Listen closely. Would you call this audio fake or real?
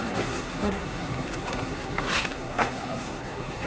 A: fake